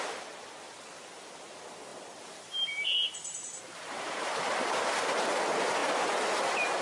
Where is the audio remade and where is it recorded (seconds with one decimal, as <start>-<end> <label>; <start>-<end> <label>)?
0.0-1.9 recorded; 1.9-5.2 remade; 5.2-5.8 recorded; 5.8-6.8 remade